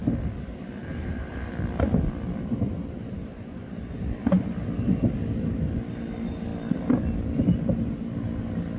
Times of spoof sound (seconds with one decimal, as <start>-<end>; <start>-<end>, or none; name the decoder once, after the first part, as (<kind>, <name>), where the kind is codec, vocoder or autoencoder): 0.8-1.5 (vocoder, BigVGAN v2)